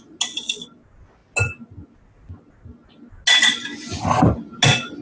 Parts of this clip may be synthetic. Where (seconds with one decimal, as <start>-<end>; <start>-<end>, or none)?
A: none